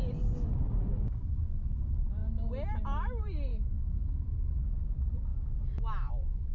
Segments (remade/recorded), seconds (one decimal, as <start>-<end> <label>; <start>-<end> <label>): 0.0-3.5 recorded; 3.5-4.6 remade; 4.6-6.5 recorded